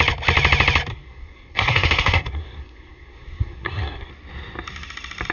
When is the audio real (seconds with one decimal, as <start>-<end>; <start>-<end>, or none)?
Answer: 0.0-0.9; 4.1-5.3